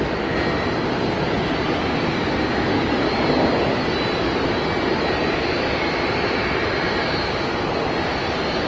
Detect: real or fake real